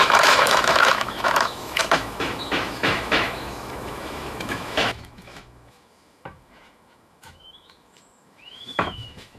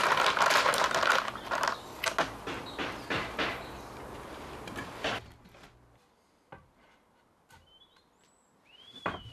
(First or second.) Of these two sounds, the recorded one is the second